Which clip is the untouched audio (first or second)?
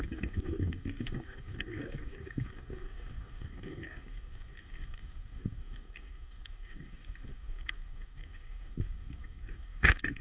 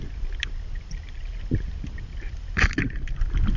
second